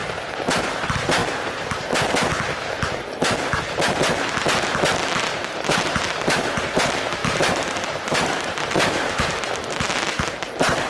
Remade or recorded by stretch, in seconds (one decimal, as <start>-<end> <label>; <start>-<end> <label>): 0.0-0.6 recorded; 0.6-1.2 remade; 1.2-5.1 recorded; 5.1-10.9 remade